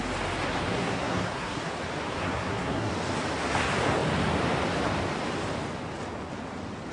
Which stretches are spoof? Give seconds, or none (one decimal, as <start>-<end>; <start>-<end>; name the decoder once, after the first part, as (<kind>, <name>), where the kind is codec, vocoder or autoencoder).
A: 0.7-1.6 (codec, SNAC); 2.1-2.9

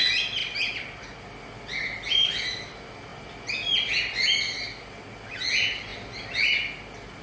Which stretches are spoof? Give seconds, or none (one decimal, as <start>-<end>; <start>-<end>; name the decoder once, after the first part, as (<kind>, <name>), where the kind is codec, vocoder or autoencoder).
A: none

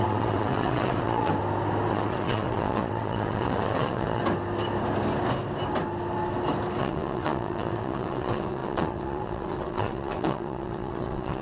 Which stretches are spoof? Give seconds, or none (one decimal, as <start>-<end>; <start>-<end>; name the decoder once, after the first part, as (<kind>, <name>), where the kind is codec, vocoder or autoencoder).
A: 0.0-1.3 (vocoder, WaveNeXt); 1.9-4.2; 6.8-11.4

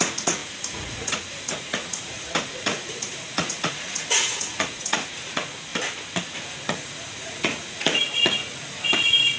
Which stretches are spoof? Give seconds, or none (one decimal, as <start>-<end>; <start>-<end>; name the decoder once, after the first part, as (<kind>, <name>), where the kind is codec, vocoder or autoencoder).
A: 0.0-5.7 (vocoder, Vocos); 6.4-9.4

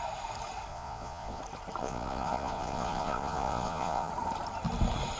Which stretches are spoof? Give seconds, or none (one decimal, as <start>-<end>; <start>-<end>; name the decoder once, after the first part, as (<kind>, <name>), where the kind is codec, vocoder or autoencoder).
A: 0.7-1.4 (vocoder, Vocos); 1.8-4.1